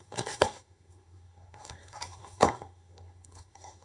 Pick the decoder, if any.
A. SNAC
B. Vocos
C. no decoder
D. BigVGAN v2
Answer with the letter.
A